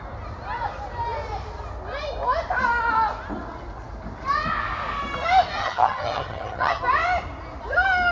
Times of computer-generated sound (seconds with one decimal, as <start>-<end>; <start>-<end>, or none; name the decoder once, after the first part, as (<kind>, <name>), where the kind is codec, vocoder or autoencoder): 5.6-6.8 (vocoder, HiFi-GAN)